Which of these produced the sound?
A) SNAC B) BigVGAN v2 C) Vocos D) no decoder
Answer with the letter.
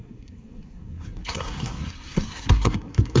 A